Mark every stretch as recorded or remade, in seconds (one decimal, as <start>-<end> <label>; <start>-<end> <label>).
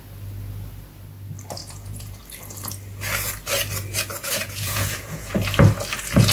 0.0-1.6 recorded; 1.6-2.2 remade; 2.2-4.1 recorded; 4.1-5.4 remade; 5.4-6.3 recorded